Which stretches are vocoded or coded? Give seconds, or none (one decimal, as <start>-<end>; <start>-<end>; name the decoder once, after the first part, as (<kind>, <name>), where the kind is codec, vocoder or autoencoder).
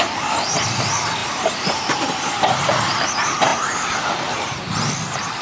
1.2-3.0 (vocoder, BigVGAN v2)